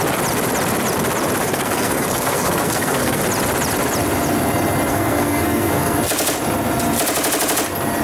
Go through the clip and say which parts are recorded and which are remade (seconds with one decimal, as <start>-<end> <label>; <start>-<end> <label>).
0.0-1.4 recorded; 1.4-3.2 remade; 3.2-4.9 recorded; 4.9-6.0 remade; 6.0-8.0 recorded